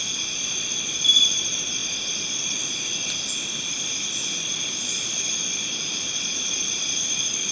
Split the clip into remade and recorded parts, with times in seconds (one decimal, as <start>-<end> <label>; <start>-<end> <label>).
0.0-7.5 recorded